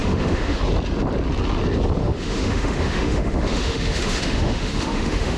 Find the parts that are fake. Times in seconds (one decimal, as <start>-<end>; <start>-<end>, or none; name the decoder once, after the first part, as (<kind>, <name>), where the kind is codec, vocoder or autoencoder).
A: 0.0-0.6 (autoencoder, DAC-VAE); 2.0-5.4